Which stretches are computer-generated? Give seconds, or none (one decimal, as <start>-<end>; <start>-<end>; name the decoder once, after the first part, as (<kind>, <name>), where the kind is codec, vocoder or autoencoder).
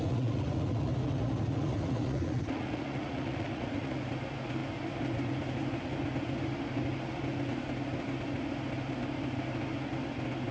0.0-4.1 (vocoder, Vocos)